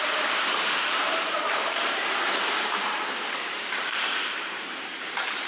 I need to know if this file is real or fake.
fake